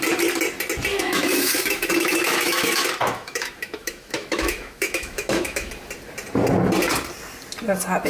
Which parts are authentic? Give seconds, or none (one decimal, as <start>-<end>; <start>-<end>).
0.0-0.9; 5.7-8.1